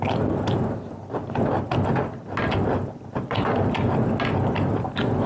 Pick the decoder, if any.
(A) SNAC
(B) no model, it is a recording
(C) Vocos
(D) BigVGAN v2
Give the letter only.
B